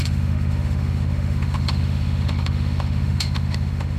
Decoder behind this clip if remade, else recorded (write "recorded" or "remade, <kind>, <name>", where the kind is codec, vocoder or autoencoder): remade, autoencoder, DAC-VAE